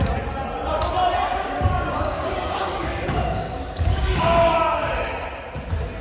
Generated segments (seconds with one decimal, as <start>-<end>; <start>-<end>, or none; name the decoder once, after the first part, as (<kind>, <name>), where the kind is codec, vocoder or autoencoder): 1.3-4.9 (codec, DAC)